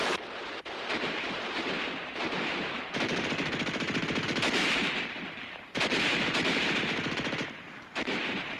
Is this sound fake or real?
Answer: fake